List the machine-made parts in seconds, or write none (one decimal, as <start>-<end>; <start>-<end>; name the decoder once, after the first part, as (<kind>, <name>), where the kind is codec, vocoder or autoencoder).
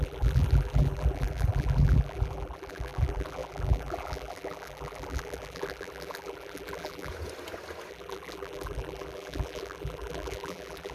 0.0-7.1 (vocoder, BigVGAN v2); 7.9-10.9